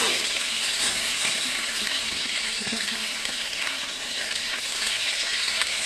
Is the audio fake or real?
fake